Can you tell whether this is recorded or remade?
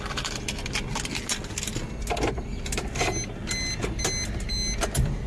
recorded